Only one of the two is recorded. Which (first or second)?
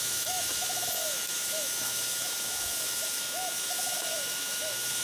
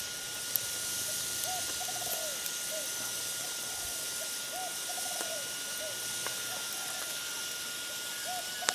second